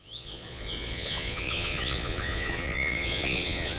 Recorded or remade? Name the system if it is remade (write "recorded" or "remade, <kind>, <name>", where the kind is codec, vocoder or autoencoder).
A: remade, vocoder, Vocos